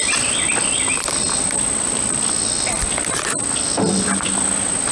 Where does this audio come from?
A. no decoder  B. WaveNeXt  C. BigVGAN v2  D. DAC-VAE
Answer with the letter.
A